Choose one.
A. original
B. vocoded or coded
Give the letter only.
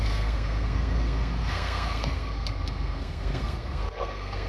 B